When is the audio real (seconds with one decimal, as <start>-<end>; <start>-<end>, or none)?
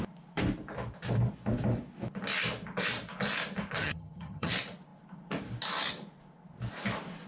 0.0-3.8; 4.5-7.3